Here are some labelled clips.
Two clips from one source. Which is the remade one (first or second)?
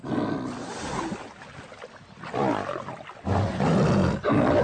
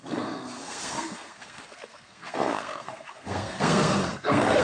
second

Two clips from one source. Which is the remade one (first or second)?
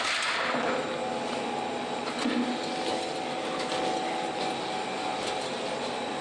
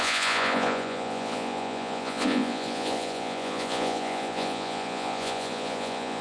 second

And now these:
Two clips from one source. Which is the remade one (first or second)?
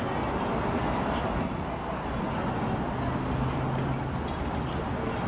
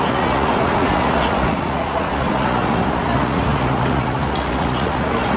second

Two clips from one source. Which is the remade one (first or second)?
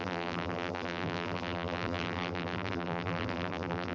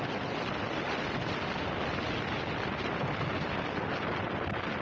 first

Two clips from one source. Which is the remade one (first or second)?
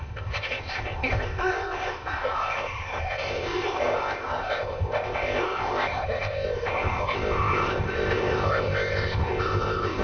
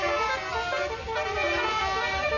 first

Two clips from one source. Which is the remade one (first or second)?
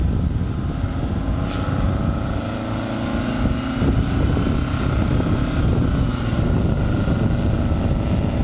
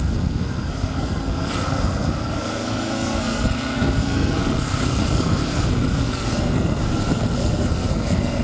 second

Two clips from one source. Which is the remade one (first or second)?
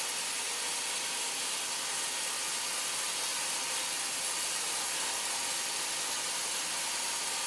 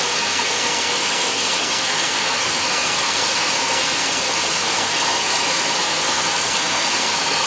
second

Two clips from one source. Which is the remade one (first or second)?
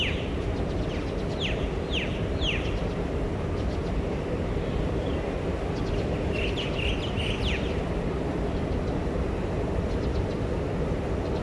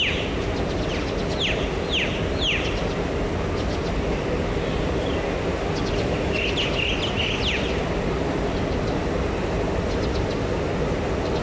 first